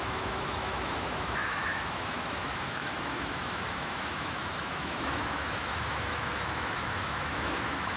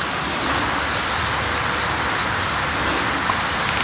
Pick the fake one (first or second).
first